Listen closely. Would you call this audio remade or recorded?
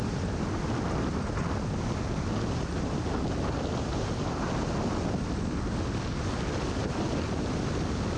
recorded